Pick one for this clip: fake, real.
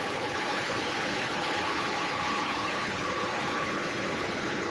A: fake